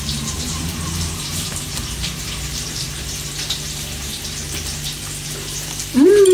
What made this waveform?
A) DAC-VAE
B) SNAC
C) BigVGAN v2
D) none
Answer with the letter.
C